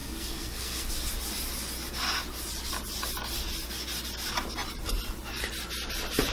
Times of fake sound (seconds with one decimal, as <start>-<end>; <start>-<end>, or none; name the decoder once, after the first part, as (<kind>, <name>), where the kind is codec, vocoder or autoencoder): 0.0-0.9 (codec, SNAC)